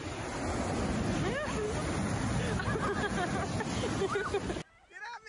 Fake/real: real